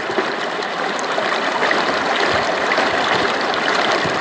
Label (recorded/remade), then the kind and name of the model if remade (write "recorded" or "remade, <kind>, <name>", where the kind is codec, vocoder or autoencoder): recorded